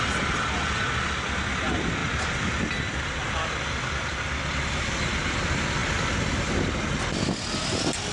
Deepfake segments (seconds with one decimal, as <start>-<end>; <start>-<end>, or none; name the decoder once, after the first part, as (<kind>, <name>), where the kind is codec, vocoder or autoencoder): none